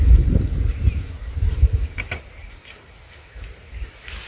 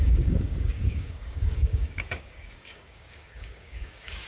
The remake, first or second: second